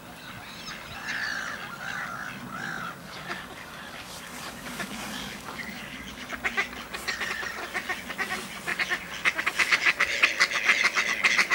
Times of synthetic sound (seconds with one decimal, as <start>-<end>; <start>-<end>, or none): 3.0-6.3